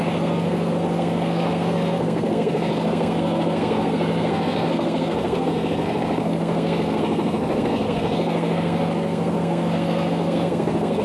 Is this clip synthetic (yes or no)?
yes